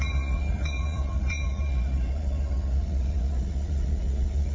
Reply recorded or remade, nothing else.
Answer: remade